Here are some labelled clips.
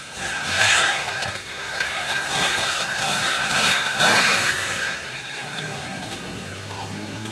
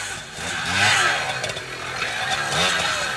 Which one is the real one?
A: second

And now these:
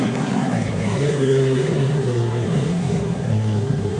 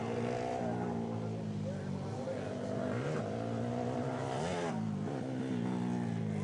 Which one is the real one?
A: second